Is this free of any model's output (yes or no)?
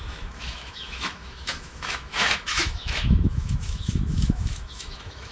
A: no